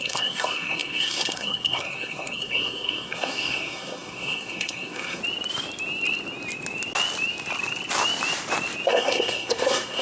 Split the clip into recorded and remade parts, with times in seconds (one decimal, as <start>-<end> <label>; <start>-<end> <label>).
0.0-5.2 remade; 5.2-8.9 recorded; 8.9-10.0 remade